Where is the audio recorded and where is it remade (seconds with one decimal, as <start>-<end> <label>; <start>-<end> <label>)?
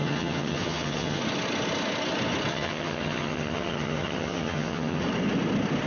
0.0-1.2 remade; 1.2-2.5 recorded; 2.5-5.0 remade; 5.0-5.9 recorded